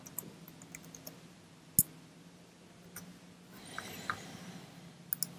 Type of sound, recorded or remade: recorded